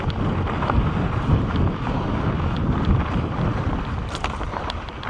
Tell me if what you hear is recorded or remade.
remade